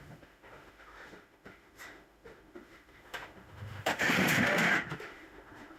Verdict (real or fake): fake